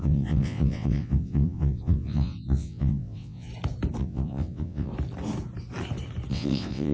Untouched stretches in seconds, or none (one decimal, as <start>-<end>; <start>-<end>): 3.5-4.0; 4.9-6.3